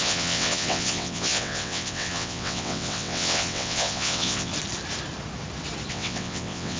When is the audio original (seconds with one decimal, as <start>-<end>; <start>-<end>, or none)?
4.5-5.9